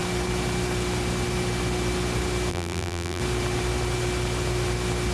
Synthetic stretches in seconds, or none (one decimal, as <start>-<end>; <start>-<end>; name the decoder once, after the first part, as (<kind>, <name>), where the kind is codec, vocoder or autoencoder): 2.5-3.2 (vocoder, BigVGAN v2)